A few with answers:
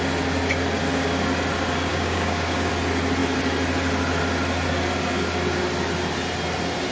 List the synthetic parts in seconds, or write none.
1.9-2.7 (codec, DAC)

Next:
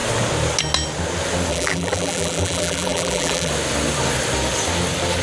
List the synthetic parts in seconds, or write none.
1.5-3.5 (vocoder, BigVGAN v2)

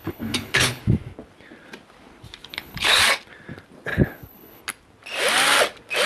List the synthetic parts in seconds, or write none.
0.0-0.8 (codec, HILCodec); 2.5-3.0; 3.9-4.6

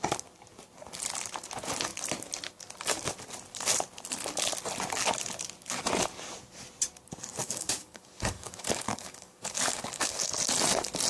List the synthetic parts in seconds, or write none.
7.4-10.4 (codec, DAC)

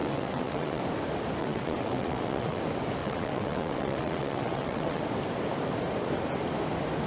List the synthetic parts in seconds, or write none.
0.0-0.8 (vocoder, WaveNeXt); 1.4-2.6; 3.0-5.0

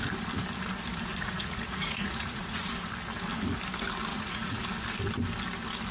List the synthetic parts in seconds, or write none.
1.1-2.7 (vocoder, Vocos); 4.1-4.6

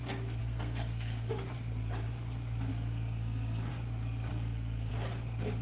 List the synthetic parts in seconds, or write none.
0.4-1.3 (codec, SNAC); 2.7-3.7; 4.3-4.9

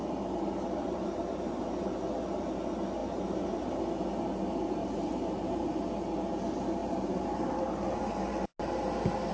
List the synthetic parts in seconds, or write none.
0.0-1.4 (vocoder, BigVGAN v2); 3.0-3.8; 4.8-5.8; 6.8-8.0